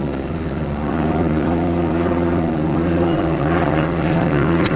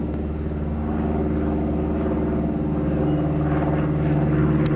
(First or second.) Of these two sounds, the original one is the second